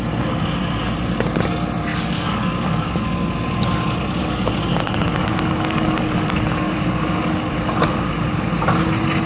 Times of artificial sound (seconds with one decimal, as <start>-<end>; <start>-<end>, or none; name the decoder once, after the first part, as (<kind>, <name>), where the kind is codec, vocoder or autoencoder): 1.9-3.3 (codec, DAC); 4.2-8.5